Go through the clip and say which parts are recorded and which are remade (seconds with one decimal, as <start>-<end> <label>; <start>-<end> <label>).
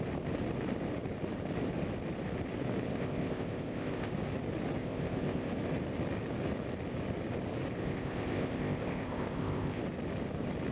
0.0-2.9 recorded; 2.9-4.1 remade; 4.1-4.8 recorded; 4.8-5.5 remade; 5.5-7.8 recorded; 7.8-9.8 remade; 9.8-10.7 recorded